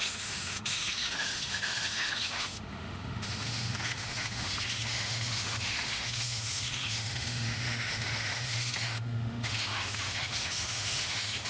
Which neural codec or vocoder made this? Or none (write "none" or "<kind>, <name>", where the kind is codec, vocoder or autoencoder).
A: autoencoder, DAC-VAE